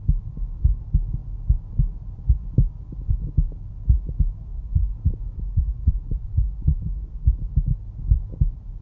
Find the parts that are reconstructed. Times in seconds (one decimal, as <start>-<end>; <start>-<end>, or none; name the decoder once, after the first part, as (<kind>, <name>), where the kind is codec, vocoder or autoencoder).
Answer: 4.5-7.1 (vocoder, Vocos)